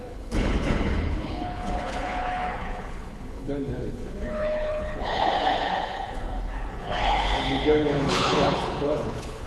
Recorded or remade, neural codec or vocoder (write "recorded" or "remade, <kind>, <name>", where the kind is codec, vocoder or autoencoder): remade, codec, HILCodec